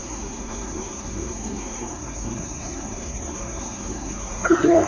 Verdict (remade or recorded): remade